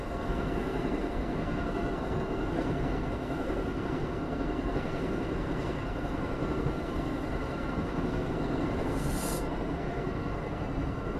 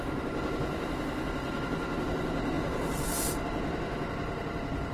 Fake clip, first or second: first